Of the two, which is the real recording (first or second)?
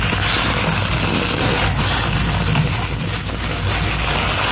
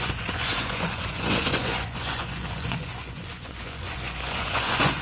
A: first